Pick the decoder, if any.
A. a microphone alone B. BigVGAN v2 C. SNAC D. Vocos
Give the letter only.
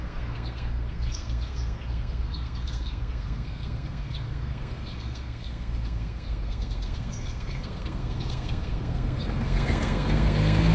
C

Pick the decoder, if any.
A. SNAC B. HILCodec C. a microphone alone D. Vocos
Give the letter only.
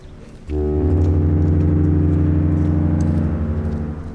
C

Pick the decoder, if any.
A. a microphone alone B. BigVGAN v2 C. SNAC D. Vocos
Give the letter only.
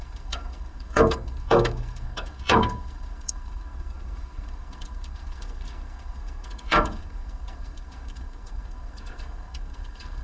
C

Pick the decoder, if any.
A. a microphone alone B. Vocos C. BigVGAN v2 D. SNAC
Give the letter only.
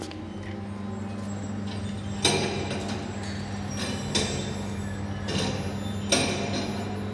A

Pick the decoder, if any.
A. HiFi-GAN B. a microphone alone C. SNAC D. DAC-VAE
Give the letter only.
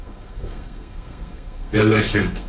C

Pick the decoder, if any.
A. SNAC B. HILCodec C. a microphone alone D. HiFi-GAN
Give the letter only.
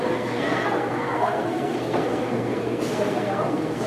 A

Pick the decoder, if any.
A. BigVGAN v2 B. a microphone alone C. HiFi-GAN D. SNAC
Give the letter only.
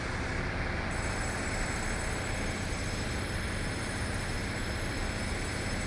B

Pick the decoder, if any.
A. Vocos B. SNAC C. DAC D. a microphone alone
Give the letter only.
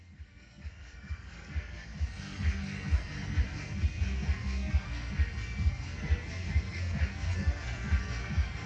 B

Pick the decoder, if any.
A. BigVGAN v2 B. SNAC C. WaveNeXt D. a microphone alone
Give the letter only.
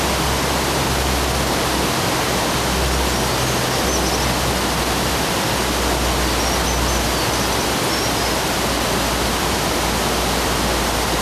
D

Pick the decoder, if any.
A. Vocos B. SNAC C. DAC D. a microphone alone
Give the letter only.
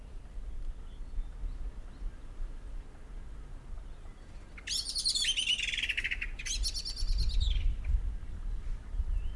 D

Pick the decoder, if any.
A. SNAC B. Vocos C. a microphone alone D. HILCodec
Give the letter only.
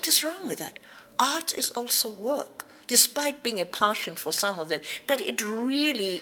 A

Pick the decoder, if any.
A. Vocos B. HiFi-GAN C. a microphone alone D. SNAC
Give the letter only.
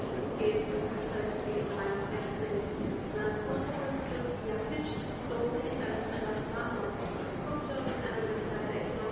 C